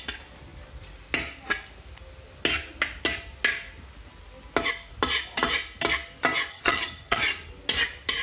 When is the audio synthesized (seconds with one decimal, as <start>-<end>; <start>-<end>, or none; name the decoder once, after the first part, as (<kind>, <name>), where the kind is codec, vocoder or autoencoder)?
6.5-7.2 (vocoder, HiFi-GAN)